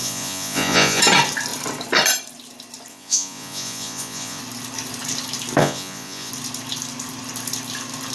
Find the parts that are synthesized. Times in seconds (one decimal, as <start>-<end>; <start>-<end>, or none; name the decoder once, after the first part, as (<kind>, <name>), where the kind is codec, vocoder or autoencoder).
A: 0.0-1.0 (vocoder, Vocos); 2.9-4.4; 5.6-6.3